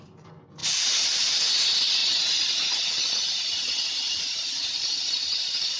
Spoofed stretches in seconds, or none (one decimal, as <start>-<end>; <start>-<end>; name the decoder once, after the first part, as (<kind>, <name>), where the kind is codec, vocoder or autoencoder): 0.6-1.5 (vocoder, BigVGAN v2); 2.0-5.8